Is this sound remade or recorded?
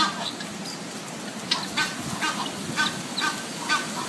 recorded